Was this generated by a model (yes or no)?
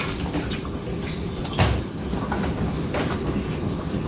no